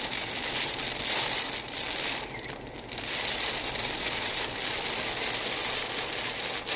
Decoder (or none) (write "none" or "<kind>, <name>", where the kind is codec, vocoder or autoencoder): none